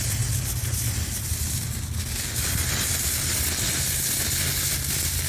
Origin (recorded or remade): recorded